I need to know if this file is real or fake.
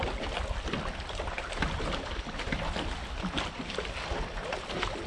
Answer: real